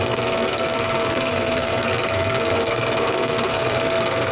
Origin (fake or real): fake